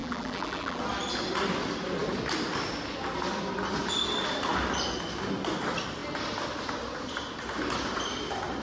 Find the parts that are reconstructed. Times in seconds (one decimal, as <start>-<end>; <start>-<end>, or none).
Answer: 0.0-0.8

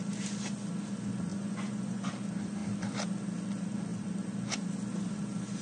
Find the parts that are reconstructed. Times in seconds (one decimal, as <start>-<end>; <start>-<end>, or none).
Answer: 1.3-2.1

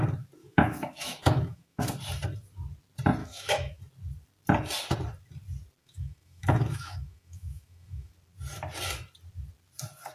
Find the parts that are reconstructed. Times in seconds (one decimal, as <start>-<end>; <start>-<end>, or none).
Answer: 0.4-1.8; 3.2-3.8; 5.8-8.1

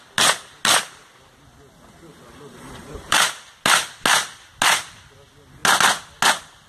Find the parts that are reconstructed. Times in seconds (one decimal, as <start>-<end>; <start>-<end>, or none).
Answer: 2.1-3.5